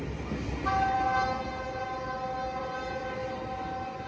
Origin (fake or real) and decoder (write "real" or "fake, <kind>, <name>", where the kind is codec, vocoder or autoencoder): real